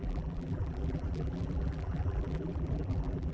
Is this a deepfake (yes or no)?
yes